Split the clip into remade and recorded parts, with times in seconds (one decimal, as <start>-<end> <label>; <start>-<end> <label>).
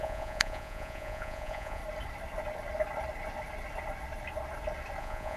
0.0-1.8 remade; 1.8-5.0 recorded; 5.0-5.4 remade